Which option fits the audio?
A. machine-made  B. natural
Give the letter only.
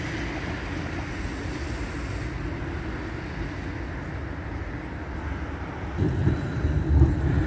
B